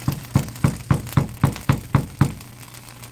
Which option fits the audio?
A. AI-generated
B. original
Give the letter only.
B